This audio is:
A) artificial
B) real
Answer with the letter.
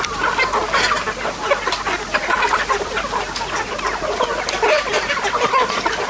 B